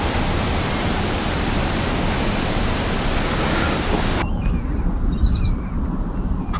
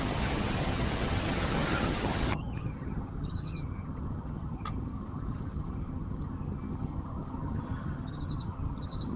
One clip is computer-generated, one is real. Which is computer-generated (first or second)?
second